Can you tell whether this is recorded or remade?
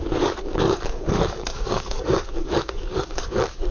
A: remade